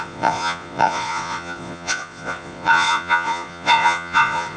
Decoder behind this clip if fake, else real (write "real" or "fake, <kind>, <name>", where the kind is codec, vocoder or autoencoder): fake, vocoder, Vocos